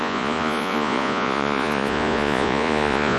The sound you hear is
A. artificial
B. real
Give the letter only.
A